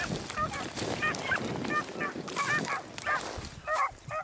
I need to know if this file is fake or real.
real